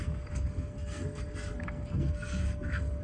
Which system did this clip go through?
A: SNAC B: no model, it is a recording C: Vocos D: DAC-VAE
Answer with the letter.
A